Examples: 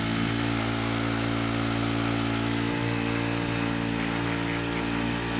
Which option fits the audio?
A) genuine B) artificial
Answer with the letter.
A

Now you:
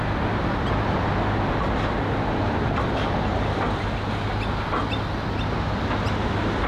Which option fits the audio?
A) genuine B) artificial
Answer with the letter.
A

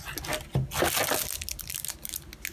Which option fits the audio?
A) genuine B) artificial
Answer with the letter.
A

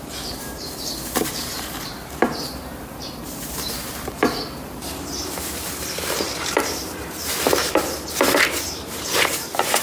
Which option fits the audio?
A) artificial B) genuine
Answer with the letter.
A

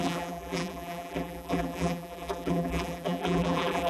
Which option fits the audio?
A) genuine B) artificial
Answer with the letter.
B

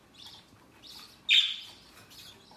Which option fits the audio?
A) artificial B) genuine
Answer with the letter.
B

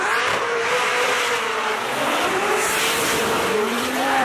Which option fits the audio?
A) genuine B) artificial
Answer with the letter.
B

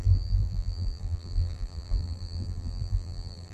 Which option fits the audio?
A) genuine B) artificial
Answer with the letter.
B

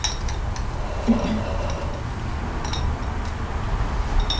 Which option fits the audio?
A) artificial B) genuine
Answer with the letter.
B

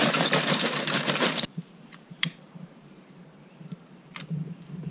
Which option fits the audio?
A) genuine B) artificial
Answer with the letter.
B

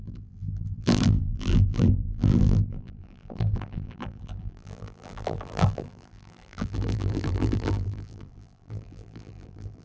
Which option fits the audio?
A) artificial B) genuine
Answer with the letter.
A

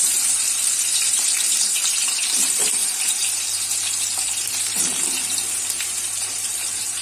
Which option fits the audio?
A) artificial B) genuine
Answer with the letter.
A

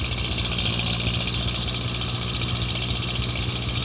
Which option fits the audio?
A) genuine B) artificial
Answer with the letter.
A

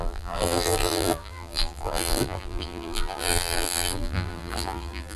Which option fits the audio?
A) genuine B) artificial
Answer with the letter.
B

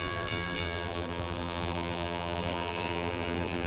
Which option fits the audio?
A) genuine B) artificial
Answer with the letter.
B